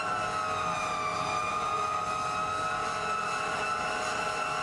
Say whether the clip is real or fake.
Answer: real